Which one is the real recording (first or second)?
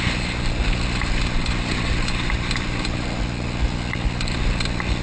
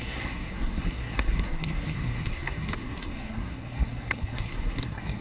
first